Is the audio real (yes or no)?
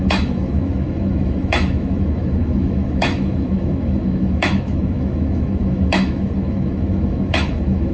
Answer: no